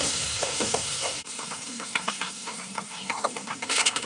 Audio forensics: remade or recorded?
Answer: remade